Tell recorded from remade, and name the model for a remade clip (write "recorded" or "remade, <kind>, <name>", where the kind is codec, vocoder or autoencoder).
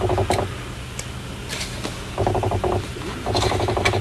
recorded